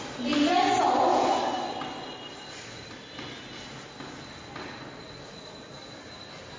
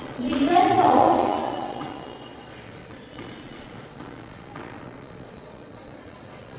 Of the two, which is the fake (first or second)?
second